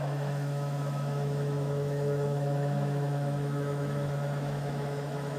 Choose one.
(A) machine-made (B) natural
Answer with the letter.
A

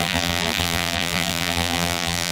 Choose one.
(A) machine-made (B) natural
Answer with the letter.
A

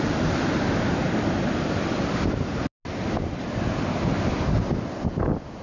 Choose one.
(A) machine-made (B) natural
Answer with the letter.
B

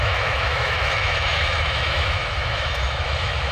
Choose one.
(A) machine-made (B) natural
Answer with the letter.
A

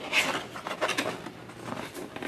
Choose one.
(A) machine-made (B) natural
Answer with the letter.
B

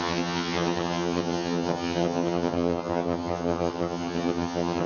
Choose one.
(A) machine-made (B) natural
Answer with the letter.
A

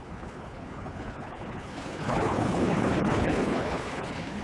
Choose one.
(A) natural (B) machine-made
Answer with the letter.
B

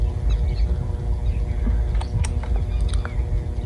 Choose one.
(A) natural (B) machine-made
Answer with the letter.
A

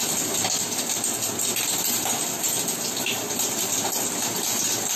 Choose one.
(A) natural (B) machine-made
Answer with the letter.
A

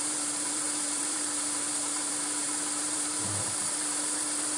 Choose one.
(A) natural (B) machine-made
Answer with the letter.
B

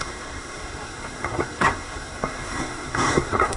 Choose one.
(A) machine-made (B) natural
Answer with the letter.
A